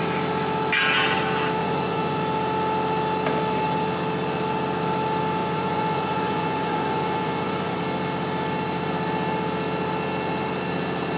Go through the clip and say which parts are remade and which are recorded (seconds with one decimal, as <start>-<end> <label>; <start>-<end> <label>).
0.0-1.6 recorded; 1.6-2.2 remade; 2.2-5.4 recorded; 5.4-7.8 remade; 7.8-11.2 recorded